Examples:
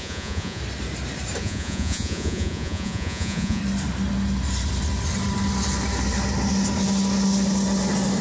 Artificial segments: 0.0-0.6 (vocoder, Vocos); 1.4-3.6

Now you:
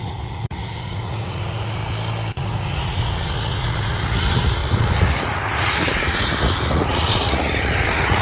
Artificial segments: 0.0-1.8 (vocoder, Vocos); 2.3-8.2